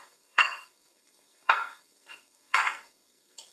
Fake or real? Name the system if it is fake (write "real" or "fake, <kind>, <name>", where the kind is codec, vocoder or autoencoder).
fake, codec, SNAC